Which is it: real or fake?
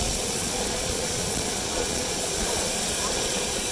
fake